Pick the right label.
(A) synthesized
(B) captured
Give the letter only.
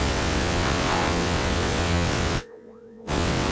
A